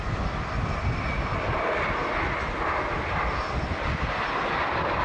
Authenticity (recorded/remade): recorded